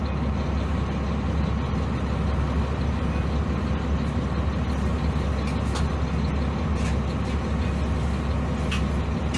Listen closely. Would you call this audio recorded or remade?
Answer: recorded